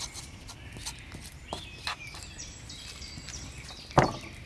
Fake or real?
real